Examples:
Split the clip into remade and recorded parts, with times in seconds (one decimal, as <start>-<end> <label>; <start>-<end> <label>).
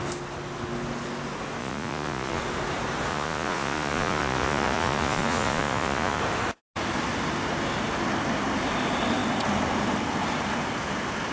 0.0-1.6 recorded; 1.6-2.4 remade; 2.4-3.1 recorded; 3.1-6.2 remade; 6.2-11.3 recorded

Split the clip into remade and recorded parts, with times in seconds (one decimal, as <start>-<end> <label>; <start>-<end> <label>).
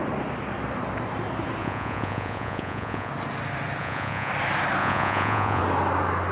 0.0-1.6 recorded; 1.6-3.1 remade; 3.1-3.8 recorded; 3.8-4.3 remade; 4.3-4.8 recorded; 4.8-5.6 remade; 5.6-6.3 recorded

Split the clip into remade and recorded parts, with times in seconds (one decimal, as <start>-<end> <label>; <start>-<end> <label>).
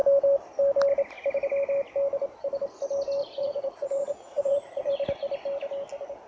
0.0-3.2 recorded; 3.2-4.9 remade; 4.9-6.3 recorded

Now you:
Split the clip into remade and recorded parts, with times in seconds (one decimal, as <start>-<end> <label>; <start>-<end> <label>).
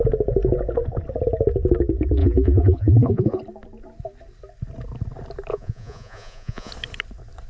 0.0-2.2 recorded; 2.2-3.4 remade; 3.4-5.5 recorded; 5.5-6.7 remade; 6.7-7.5 recorded